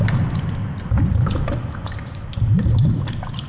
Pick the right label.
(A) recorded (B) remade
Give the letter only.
A